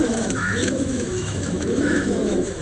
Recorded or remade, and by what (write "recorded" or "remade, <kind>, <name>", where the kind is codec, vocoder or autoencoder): remade, autoencoder, DAC-VAE